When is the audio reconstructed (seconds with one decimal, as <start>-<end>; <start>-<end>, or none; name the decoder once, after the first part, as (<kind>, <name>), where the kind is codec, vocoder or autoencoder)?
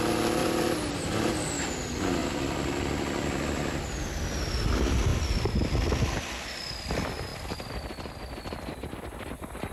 0.4-1.7 (vocoder, BigVGAN v2); 2.2-3.7; 5.1-6.7; 7.3-8.2